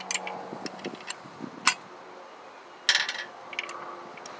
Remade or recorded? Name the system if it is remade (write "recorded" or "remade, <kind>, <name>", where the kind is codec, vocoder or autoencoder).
recorded